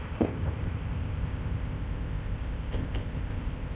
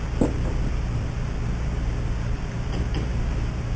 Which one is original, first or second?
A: second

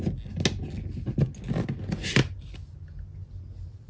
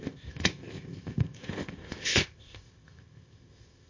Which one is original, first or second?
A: first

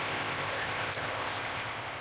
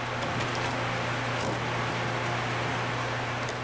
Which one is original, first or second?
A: second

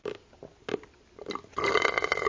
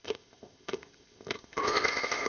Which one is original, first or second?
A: first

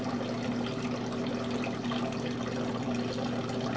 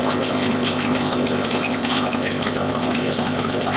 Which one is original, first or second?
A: first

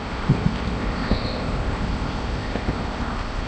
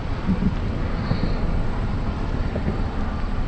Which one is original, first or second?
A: second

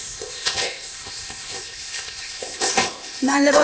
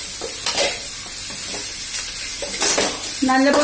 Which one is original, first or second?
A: second